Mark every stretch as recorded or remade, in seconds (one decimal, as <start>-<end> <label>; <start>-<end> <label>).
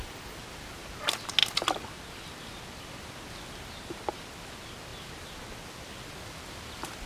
0.0-1.4 recorded; 1.4-4.1 remade; 4.1-4.9 recorded; 4.9-5.4 remade; 5.4-7.1 recorded